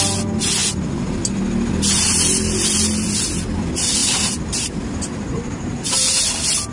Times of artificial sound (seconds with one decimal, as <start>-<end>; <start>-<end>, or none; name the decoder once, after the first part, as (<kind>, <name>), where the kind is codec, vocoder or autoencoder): 4.0-6.2 (vocoder, BigVGAN v2)